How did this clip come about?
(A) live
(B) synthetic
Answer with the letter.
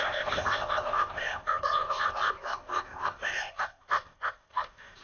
B